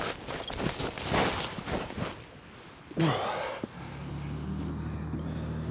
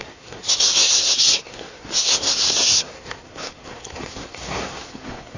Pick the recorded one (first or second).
first